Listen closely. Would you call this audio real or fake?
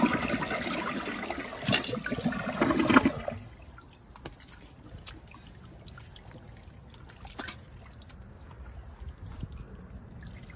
real